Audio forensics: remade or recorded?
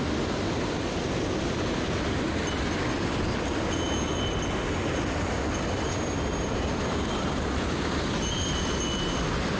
recorded